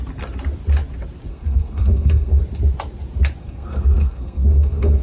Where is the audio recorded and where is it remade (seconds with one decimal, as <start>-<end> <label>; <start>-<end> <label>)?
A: 0.0-1.3 recorded; 1.3-2.4 remade; 2.4-3.4 recorded; 3.4-5.0 remade